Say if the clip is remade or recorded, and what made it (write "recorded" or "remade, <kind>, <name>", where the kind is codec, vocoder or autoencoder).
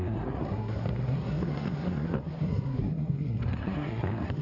remade, codec, SNAC